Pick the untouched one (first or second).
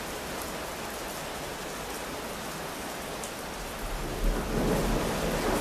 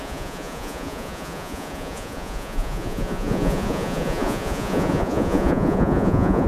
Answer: first